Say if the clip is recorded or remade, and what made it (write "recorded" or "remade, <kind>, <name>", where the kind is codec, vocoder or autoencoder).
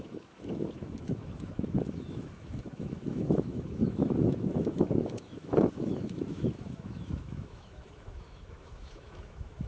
remade, autoencoder, DAC-VAE